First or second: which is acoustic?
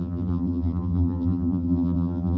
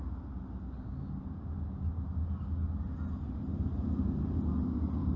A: second